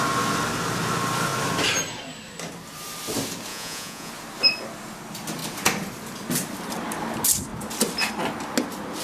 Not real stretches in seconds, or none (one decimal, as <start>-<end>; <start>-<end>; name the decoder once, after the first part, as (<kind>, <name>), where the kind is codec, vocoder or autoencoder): 3.5-4.1 (vocoder, Vocos)